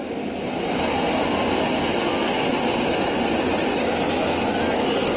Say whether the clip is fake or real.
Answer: real